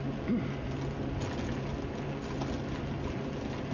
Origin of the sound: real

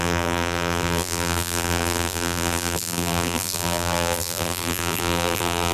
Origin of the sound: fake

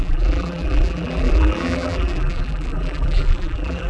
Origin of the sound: fake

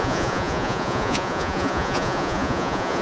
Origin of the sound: fake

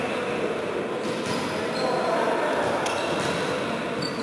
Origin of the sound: real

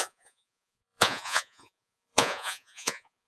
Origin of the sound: fake